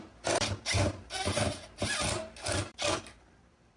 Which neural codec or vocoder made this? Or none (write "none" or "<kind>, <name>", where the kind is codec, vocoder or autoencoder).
vocoder, BigVGAN v2